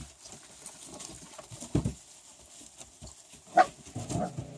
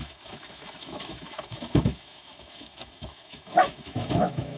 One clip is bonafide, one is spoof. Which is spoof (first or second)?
second